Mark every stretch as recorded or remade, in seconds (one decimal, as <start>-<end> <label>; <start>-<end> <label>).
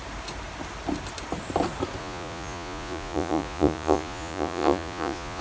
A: 0.0-2.0 recorded; 2.0-5.4 remade